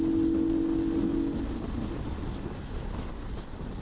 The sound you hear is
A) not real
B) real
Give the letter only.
B